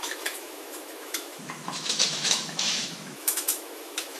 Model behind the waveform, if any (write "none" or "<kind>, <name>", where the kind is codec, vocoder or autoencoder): autoencoder, DAC-VAE